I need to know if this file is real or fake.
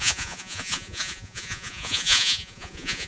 fake